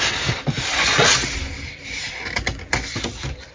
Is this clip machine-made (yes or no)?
no